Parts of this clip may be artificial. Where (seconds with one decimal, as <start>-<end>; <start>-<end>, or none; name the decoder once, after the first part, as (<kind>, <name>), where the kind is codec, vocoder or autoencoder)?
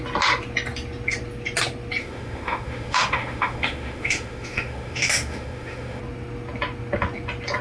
2.0-6.0 (autoencoder, DAC-VAE)